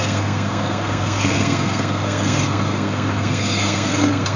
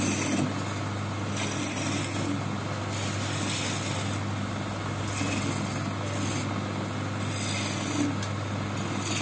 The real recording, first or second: second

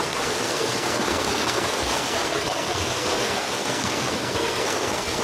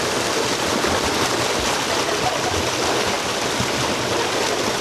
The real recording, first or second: second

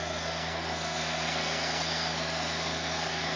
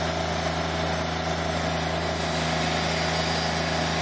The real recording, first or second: second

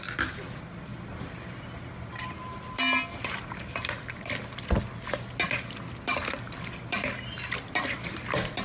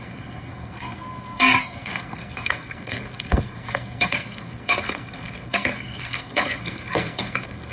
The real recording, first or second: first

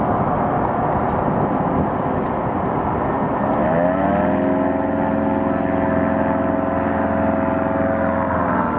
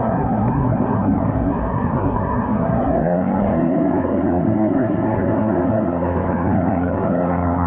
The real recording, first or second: first